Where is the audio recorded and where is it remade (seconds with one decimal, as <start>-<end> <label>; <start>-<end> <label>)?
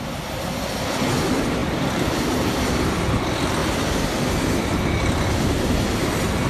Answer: 0.0-6.5 recorded